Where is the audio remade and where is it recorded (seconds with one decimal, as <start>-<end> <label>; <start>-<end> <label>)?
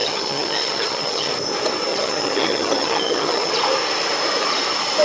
0.0-1.3 remade; 1.3-1.9 recorded; 1.9-3.5 remade; 3.5-5.0 recorded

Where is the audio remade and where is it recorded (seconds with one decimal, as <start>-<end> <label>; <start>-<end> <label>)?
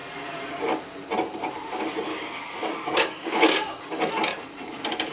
0.0-2.1 recorded; 2.1-3.9 remade; 3.9-5.1 recorded